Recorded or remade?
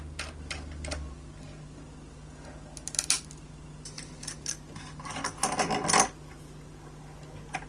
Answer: recorded